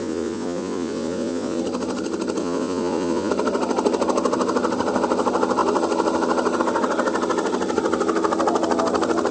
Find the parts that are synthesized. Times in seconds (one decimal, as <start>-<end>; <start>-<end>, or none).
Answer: 0.0-1.6; 2.4-3.3